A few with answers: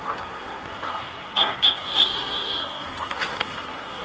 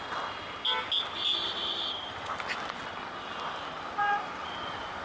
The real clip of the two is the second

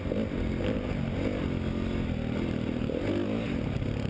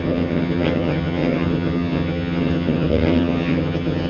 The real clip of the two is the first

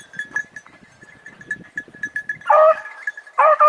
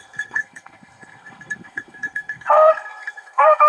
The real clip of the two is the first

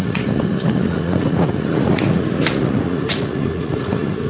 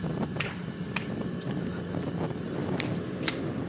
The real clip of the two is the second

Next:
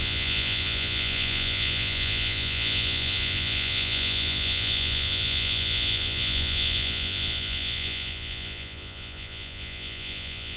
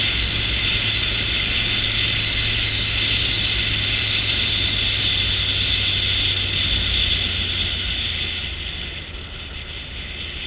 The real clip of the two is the second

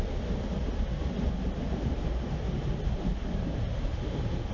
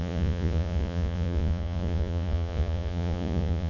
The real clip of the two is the first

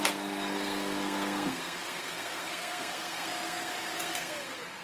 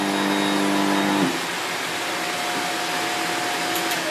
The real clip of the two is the second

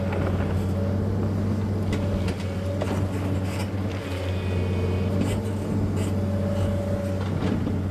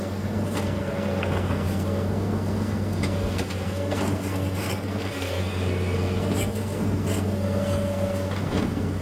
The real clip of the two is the first